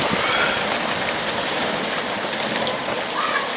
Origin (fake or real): real